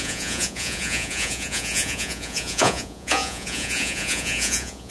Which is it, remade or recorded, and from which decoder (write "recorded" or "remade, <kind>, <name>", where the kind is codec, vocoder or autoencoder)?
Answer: remade, vocoder, Vocos